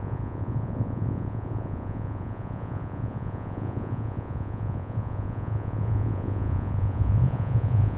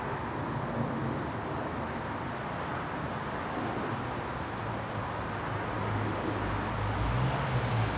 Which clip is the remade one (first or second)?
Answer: first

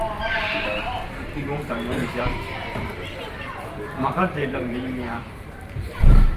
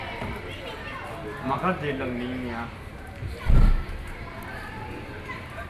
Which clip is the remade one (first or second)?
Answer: first